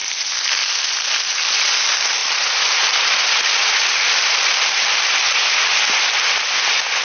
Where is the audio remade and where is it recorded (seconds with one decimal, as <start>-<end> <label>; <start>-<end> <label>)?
0.0-2.2 recorded; 2.2-4.2 remade; 4.2-7.0 recorded